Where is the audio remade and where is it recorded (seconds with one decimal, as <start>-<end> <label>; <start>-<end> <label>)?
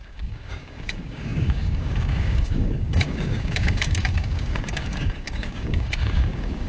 0.0-6.7 remade